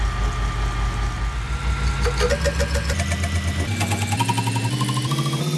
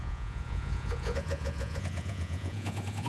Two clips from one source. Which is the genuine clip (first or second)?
first